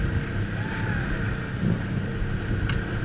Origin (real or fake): real